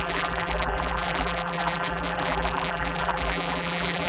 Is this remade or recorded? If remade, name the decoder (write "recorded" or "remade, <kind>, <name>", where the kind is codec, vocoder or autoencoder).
remade, vocoder, BigVGAN v2